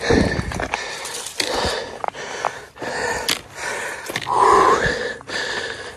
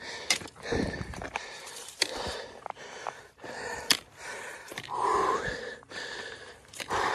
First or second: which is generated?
second